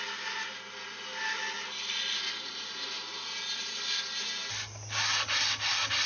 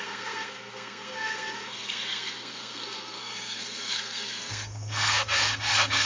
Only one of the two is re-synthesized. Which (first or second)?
second